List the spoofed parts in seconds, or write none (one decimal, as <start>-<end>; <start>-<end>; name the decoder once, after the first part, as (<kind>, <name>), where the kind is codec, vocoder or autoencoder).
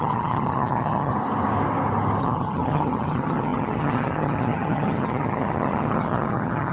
0.0-1.1 (vocoder, HiFi-GAN); 2.2-6.7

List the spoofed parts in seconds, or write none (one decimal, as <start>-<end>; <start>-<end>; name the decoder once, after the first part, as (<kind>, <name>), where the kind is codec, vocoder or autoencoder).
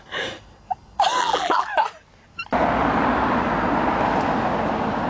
1.2-1.7 (vocoder, BigVGAN v2)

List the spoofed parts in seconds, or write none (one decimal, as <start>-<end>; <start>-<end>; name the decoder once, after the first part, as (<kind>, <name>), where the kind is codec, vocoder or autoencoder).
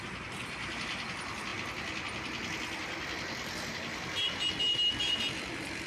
none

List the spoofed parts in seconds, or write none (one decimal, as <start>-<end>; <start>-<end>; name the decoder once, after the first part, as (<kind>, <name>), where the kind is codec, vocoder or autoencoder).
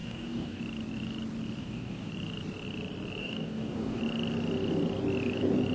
0.0-0.6 (codec, DAC); 1.6-2.1; 3.2-4.0